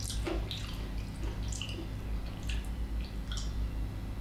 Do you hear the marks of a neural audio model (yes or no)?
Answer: no